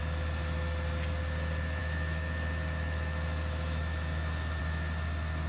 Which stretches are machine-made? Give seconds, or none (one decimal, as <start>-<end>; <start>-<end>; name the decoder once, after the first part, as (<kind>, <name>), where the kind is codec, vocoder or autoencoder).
1.8-4.6 (autoencoder, DAC-VAE)